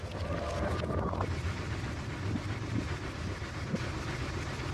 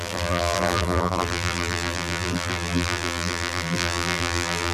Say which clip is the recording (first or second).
first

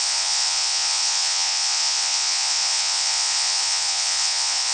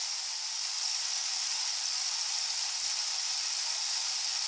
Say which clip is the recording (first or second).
second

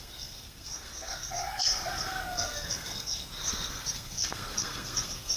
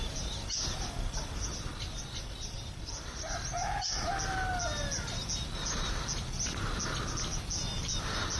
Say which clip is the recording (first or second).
second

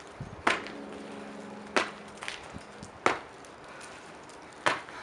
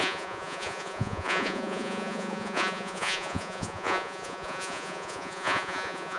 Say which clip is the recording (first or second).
first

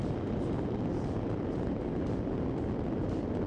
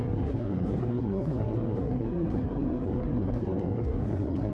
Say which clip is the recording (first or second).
first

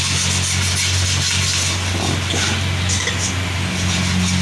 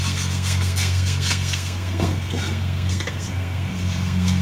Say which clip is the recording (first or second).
first